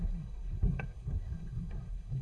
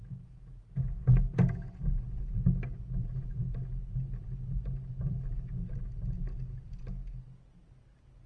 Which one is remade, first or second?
first